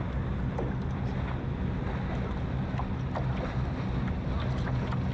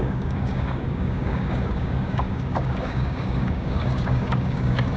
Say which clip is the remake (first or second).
second